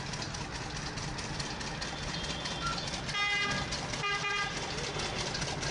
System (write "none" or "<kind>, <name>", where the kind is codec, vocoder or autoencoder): none